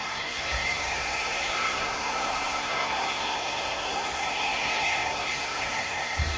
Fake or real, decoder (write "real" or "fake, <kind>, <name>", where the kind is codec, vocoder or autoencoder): fake, codec, SNAC